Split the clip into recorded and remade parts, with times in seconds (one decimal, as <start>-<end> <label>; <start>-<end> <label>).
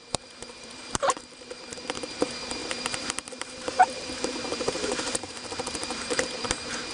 0.0-6.9 remade